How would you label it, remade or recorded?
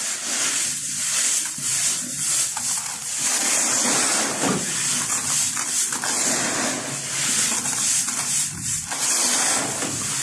recorded